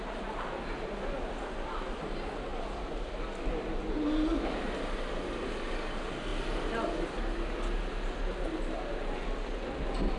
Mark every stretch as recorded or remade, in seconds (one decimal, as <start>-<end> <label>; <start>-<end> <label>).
0.0-10.2 recorded